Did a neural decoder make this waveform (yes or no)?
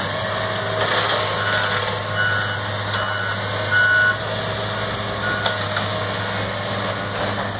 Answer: no